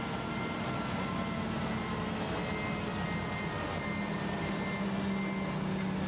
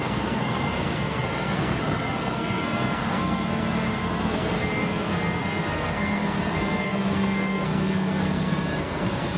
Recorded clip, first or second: first